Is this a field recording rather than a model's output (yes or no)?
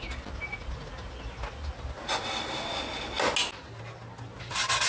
yes